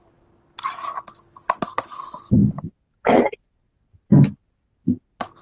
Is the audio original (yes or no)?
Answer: yes